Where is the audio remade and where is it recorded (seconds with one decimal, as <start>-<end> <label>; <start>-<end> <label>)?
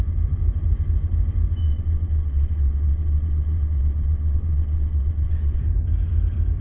0.0-1.6 recorded; 1.6-5.6 remade; 5.6-6.6 recorded